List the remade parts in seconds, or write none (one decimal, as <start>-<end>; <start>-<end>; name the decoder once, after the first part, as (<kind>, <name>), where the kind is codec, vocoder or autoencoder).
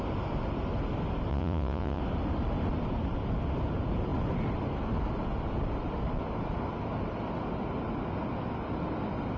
1.3-2.0 (vocoder, Vocos)